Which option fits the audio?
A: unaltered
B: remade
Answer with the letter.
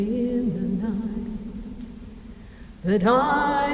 B